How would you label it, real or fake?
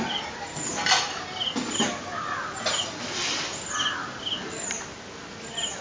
real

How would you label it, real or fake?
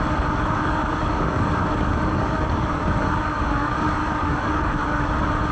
fake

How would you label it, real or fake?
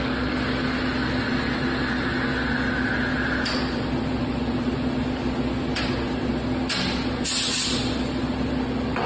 real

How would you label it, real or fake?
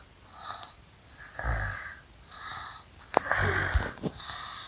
real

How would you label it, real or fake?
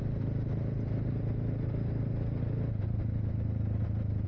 real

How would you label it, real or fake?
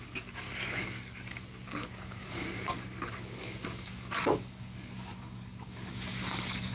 fake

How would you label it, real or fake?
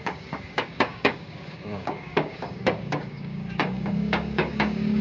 fake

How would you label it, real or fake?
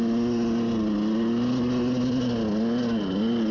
real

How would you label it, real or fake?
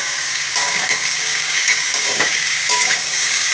fake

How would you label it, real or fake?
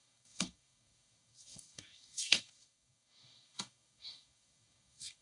fake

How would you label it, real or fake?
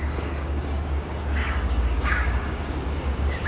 fake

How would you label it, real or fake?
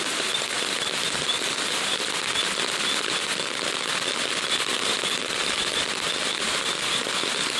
real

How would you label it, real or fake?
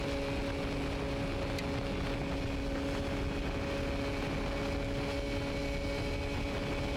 real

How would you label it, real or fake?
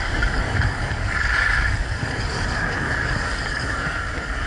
fake